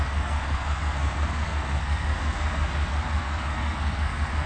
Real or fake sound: fake